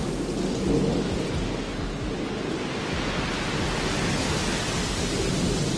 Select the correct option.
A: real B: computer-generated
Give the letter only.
A